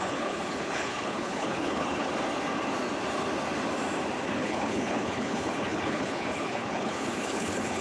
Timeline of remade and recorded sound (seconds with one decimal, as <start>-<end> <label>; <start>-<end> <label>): 0.0-2.1 remade; 2.1-4.3 recorded; 4.3-7.8 remade